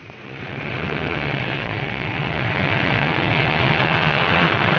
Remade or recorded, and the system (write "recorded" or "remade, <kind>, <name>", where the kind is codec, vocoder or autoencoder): remade, vocoder, WaveNeXt